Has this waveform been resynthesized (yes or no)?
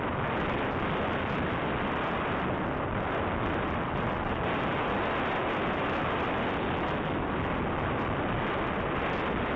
no